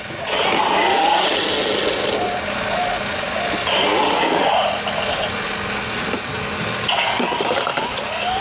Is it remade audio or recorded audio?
recorded